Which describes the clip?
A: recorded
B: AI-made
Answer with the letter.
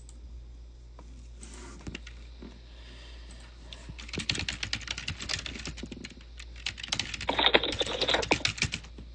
A